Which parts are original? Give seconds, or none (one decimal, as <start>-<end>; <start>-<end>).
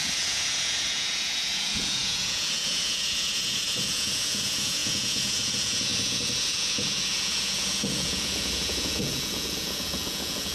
none